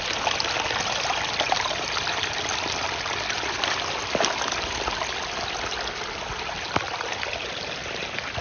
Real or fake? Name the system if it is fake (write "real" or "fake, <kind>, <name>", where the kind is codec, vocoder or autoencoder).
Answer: real